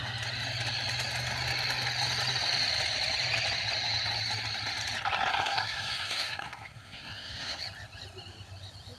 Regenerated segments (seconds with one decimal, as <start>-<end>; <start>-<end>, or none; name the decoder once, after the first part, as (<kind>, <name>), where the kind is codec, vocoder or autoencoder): 5.3-7.6 (codec, SNAC)